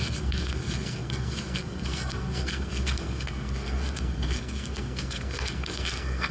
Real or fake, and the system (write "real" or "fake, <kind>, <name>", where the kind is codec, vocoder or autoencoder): fake, codec, SNAC